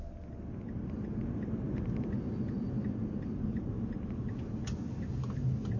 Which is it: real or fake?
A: real